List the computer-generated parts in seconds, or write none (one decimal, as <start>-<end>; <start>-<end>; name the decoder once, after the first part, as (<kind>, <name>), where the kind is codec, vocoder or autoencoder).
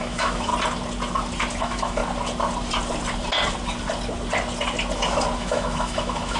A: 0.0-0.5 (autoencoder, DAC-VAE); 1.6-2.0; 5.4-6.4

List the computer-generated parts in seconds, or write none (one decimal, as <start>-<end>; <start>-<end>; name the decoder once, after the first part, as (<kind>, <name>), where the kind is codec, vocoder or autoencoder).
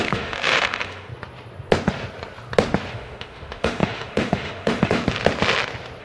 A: 0.0-1.1 (autoencoder, DAC-VAE); 2.9-5.0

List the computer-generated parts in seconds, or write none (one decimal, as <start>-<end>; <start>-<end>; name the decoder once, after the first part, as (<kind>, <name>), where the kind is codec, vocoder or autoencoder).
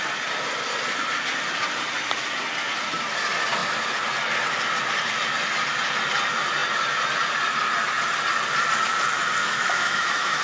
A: 9.4-10.4 (autoencoder, DAC-VAE)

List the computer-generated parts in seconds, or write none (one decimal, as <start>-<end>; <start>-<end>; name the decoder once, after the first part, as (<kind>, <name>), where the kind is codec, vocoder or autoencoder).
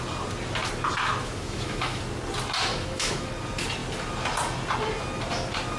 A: 1.2-2.0 (autoencoder, DAC-VAE); 2.7-3.3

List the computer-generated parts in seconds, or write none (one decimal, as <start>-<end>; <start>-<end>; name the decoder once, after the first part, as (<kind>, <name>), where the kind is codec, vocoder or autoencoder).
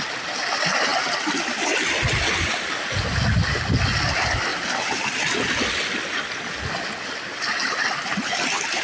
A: none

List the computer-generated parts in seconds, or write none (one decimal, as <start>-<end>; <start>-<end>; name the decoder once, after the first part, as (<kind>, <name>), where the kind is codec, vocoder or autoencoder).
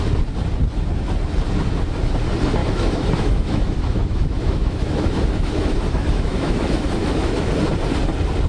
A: 2.6-7.5 (autoencoder, DAC-VAE)